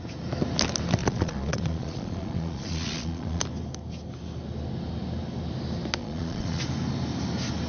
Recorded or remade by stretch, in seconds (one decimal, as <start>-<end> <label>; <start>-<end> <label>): 0.0-1.0 recorded; 1.0-3.4 remade; 3.4-6.0 recorded; 6.0-6.6 remade; 6.6-7.7 recorded